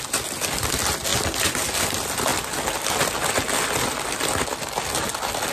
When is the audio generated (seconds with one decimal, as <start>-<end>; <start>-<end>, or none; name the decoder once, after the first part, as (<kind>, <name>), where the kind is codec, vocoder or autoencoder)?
none